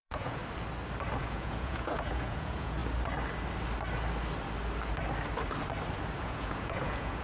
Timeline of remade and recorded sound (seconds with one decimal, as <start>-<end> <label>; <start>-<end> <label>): 0.0-0.4 remade; 0.4-1.2 recorded; 1.2-2.8 remade; 2.8-6.2 recorded; 6.2-7.2 remade